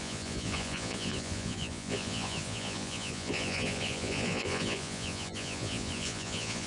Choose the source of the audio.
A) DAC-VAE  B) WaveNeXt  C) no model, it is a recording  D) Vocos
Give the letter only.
D